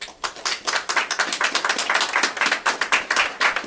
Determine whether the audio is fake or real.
real